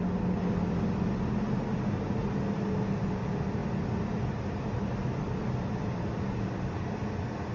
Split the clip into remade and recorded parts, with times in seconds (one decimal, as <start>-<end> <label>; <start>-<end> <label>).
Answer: 0.0-7.5 recorded